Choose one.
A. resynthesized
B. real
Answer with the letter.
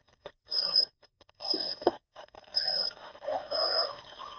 A